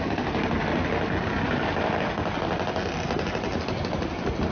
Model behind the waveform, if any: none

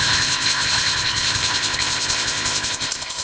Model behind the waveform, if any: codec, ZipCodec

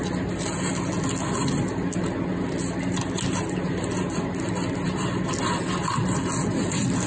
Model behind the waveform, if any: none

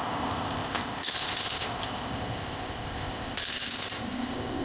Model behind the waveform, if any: codec, ZipCodec